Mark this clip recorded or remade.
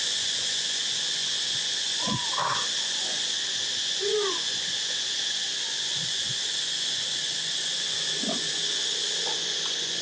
remade